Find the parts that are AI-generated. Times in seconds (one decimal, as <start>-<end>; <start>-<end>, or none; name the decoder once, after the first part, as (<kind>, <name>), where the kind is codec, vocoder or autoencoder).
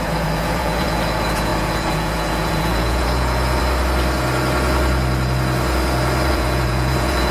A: 0.0-3.6 (vocoder, Vocos); 6.3-7.3